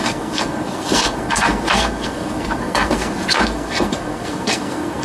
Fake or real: fake